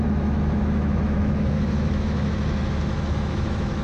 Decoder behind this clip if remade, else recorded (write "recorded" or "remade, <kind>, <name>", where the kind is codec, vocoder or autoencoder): remade, autoencoder, DAC-VAE